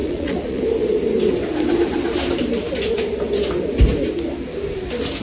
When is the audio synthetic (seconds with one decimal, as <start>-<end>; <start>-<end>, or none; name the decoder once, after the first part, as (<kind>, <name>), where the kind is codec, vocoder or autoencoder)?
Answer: 0.0-0.6 (vocoder, Vocos)